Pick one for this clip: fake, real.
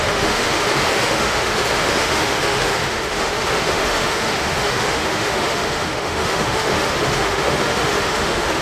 fake